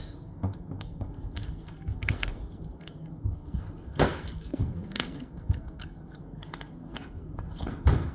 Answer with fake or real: fake